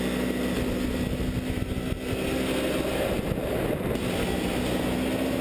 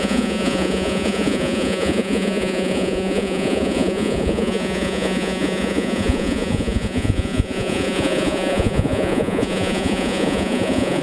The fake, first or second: second